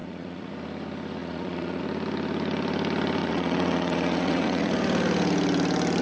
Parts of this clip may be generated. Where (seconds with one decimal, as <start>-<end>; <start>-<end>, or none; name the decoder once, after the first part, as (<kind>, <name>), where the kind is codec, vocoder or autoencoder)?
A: 0.0-0.5 (vocoder, Vocos); 1.2-1.8; 3.2-4.7